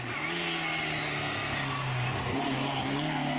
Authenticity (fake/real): real